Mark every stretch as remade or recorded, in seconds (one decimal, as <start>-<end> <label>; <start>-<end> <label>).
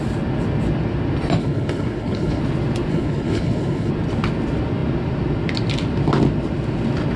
0.0-1.4 recorded; 1.4-2.4 remade; 2.4-2.9 recorded; 2.9-3.9 remade; 3.9-7.2 recorded